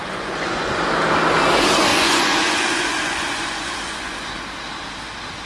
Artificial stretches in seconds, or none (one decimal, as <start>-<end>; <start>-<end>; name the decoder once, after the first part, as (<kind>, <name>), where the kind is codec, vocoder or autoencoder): 0.0-0.9 (vocoder, Vocos); 1.9-4.4